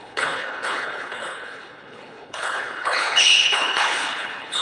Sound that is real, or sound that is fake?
fake